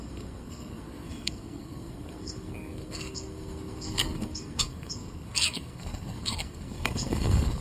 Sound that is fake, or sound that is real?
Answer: fake